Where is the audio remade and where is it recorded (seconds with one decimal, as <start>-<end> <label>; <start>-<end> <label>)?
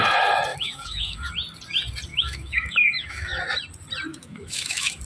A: 0.0-0.5 recorded; 0.5-1.3 remade; 1.3-2.1 recorded; 2.1-3.4 remade; 3.4-4.1 recorded; 4.1-5.0 remade